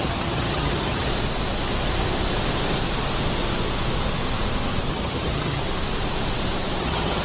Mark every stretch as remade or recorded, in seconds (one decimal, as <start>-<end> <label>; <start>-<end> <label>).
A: 0.0-1.1 remade; 1.1-4.9 recorded; 4.9-5.6 remade; 5.6-6.8 recorded; 6.8-7.2 remade